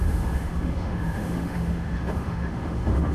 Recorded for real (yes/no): no